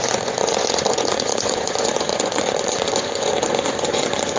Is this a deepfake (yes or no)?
yes